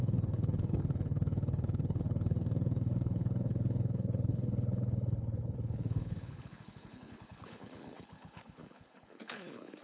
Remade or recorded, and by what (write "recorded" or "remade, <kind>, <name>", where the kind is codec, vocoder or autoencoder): remade, codec, HILCodec